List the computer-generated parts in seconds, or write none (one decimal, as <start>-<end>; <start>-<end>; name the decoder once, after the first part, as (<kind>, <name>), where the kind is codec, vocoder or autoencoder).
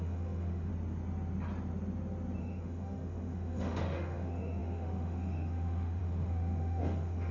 0.0-0.7 (autoencoder, DAC-VAE); 2.4-7.3